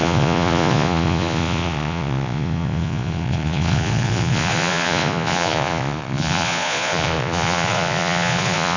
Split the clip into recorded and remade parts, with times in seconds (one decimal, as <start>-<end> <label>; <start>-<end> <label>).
0.0-8.8 remade